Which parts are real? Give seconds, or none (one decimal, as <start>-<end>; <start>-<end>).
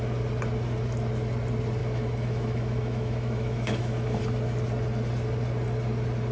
0.0-1.8; 4.2-6.3